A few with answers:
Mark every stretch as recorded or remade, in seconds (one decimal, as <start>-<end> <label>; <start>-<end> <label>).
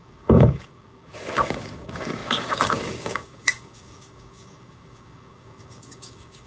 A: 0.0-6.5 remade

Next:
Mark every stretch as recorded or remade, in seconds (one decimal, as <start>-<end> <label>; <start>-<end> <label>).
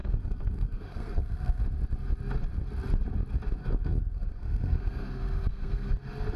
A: 0.0-1.6 remade; 1.6-3.6 recorded; 3.6-5.9 remade; 5.9-6.4 recorded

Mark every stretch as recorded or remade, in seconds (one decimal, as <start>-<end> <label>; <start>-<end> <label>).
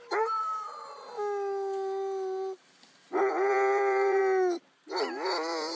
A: 0.0-1.1 remade; 1.1-2.6 recorded; 2.6-4.2 remade; 4.2-5.1 recorded; 5.1-5.8 remade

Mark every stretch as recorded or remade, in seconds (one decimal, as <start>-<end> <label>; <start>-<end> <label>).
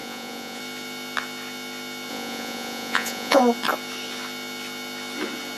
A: 0.0-0.6 remade; 0.6-2.1 recorded; 2.1-3.4 remade; 3.4-5.6 recorded